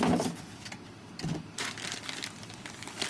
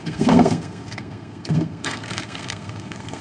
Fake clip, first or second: second